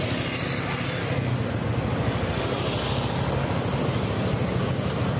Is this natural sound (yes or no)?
yes